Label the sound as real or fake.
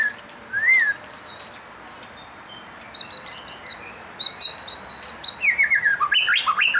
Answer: real